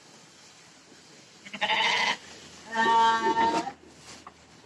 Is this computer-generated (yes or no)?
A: no